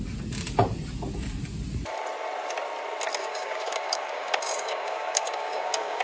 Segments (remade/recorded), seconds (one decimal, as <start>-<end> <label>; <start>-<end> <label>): 0.0-3.2 recorded; 3.2-6.0 remade